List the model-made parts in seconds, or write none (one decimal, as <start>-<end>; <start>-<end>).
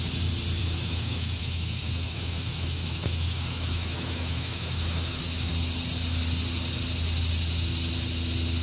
0.6-5.5